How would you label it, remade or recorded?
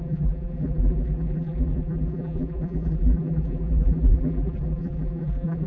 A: remade